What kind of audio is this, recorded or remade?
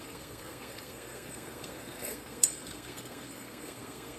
remade